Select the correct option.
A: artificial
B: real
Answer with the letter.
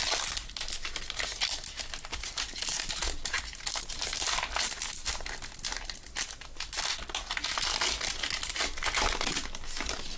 B